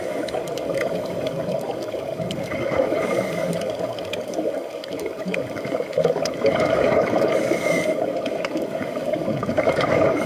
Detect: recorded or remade remade